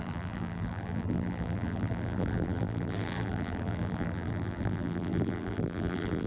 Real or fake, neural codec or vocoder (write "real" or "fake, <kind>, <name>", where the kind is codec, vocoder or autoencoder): fake, vocoder, BigVGAN v2